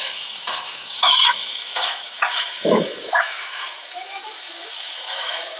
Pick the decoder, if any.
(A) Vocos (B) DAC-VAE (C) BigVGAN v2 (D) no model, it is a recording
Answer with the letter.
B